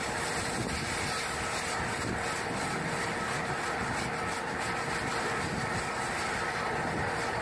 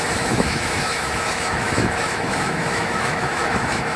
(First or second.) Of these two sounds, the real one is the first